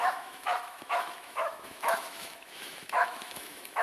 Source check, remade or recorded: remade